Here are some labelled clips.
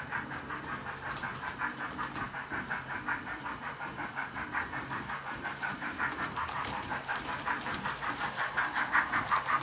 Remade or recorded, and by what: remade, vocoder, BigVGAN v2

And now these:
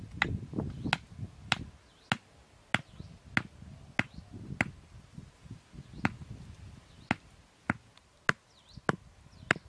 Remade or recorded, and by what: recorded